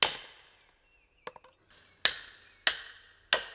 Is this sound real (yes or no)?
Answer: yes